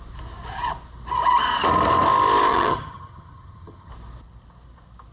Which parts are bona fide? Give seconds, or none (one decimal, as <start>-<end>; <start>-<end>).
0.0-2.5; 3.9-5.1